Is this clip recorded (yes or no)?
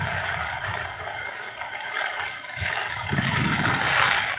no